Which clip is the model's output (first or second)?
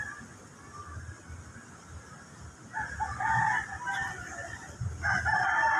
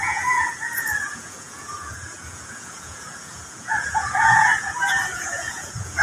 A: second